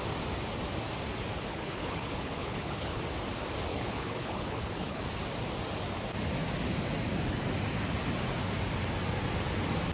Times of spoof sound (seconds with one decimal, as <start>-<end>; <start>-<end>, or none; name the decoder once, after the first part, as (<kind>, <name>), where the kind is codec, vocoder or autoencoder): 1.5-3.0 (codec, HILCodec); 3.7-5.0